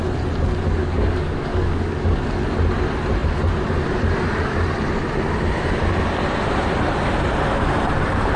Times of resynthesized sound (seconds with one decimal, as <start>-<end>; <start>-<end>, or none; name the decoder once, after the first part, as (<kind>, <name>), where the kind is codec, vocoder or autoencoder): 0.8-2.2 (codec, DAC)